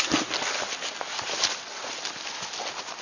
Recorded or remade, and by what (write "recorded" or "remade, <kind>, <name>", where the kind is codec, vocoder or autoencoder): recorded